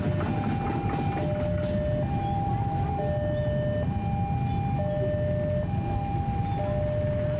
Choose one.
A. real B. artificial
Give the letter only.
A